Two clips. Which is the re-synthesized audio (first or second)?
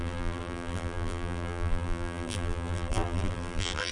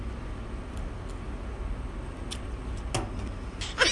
first